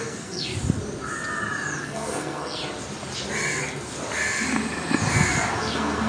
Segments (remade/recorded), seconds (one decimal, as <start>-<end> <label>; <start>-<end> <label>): 0.0-0.5 remade; 0.5-1.8 recorded; 1.8-2.6 remade; 2.6-5.6 recorded; 5.6-6.1 remade